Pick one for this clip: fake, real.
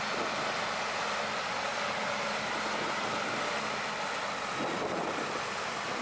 real